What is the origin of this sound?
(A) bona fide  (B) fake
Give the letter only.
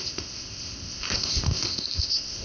B